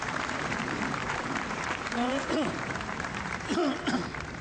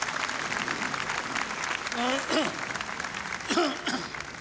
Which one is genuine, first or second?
second